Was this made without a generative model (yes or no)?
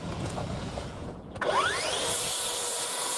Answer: no